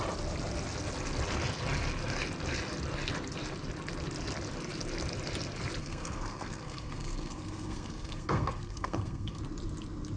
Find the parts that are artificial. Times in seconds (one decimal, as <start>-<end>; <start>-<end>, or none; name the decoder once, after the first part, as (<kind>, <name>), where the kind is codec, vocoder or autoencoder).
5.8-9.4 (codec, SNAC)

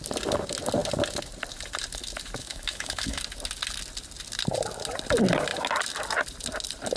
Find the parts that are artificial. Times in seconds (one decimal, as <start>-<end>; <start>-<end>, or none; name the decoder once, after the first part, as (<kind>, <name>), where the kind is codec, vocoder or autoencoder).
2.4-3.2 (autoencoder, DAC-VAE)